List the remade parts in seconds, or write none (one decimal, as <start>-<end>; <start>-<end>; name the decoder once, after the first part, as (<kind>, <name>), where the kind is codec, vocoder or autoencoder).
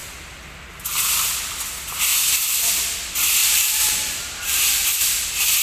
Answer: 3.4-5.0 (vocoder, BigVGAN v2)